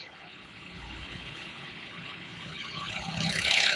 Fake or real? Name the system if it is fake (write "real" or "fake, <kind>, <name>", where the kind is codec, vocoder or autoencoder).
fake, codec, HILCodec